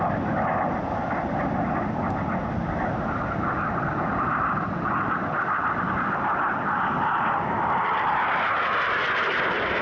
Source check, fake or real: real